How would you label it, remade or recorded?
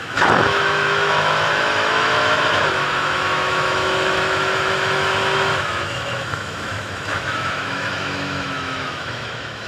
remade